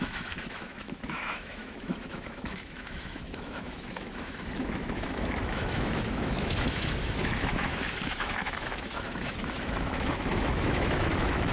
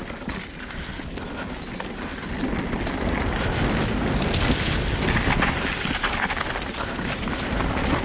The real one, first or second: second